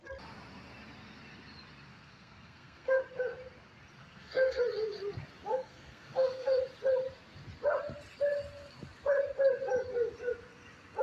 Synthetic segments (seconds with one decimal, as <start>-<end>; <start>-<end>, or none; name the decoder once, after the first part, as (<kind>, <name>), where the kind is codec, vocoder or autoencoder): 1.9-3.0 (codec, SNAC); 4.0-4.6; 5.5-6.6